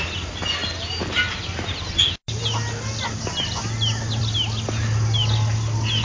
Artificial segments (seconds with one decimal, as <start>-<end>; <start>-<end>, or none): none